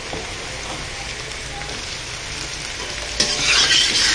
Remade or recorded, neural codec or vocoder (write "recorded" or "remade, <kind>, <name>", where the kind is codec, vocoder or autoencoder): recorded